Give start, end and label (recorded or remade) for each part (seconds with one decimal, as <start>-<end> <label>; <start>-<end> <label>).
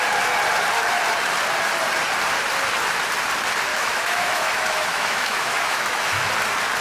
0.0-3.7 recorded; 3.7-6.3 remade; 6.3-6.8 recorded